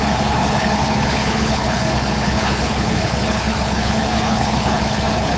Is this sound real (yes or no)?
no